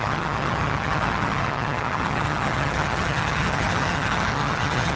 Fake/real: fake